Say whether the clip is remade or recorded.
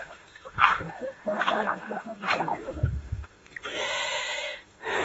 remade